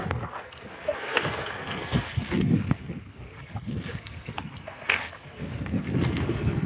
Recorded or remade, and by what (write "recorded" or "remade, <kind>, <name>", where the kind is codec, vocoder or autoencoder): remade, codec, SNAC